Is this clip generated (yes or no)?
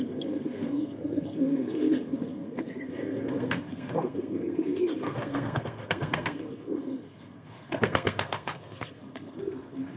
yes